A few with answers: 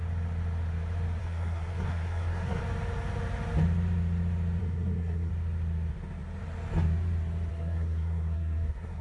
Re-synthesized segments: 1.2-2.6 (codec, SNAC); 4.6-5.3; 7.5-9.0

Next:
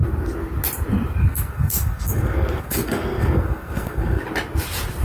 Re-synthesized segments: 1.2-4.2 (codec, SNAC)

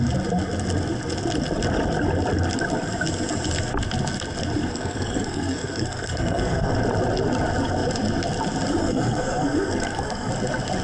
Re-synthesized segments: 4.6-6.8 (codec, SNAC); 8.8-10.3

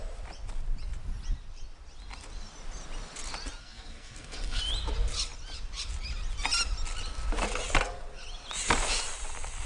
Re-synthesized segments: 3.6-4.6 (codec, SNAC)